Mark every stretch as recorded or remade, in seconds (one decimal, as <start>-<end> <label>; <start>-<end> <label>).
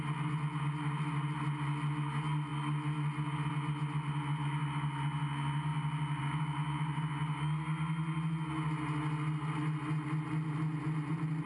0.0-11.5 recorded